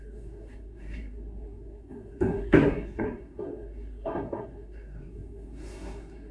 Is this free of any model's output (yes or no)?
no